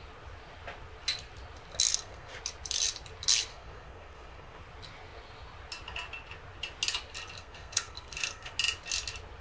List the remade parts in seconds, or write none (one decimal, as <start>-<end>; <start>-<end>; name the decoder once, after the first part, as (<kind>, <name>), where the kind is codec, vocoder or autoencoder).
1.9-2.4 (codec, SNAC); 3.5-4.6; 7.4-8.5